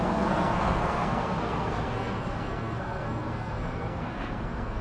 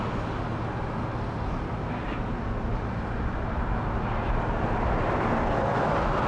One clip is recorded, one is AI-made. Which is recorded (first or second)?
second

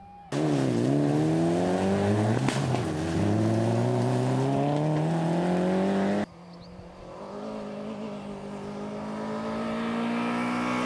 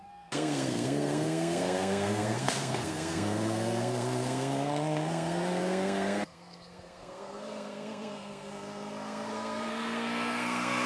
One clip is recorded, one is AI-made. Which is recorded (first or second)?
first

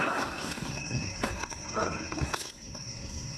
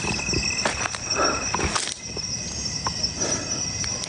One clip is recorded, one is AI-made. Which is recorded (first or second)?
second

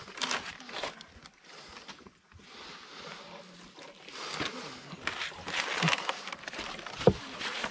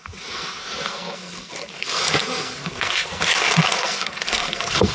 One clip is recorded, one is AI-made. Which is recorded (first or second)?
first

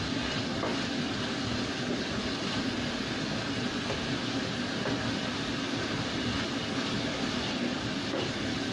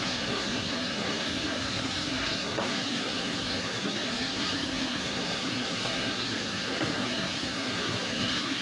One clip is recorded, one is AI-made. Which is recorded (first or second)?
first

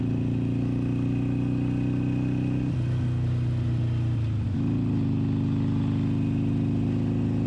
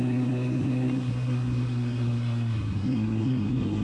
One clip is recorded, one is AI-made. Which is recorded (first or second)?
first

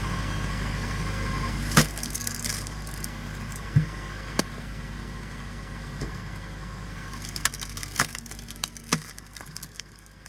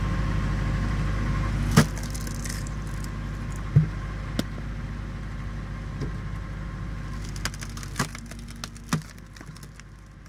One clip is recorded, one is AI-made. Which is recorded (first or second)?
second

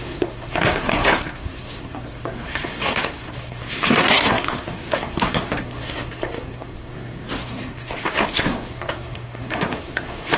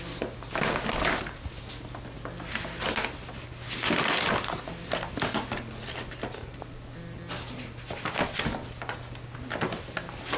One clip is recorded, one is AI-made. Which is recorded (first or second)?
second